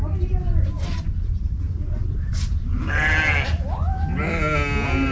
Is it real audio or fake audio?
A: real